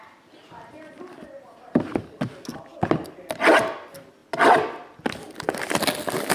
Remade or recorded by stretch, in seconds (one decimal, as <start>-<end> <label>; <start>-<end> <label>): 0.0-6.3 recorded